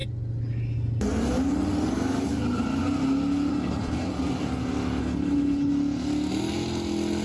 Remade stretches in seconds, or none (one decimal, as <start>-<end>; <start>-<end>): 3.5-4.1; 5.0-5.7